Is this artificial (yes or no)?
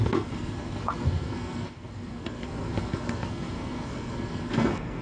yes